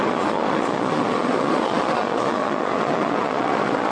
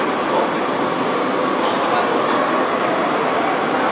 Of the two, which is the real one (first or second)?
second